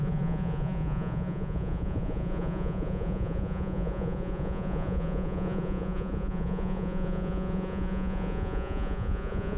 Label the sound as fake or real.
fake